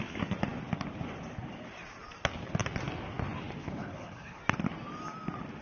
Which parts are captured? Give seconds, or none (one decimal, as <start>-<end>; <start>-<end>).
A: 0.0-3.6; 4.4-5.6